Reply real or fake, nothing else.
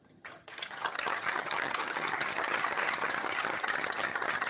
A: fake